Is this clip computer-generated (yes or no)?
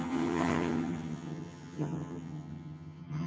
yes